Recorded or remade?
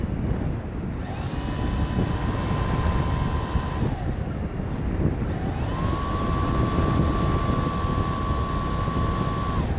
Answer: recorded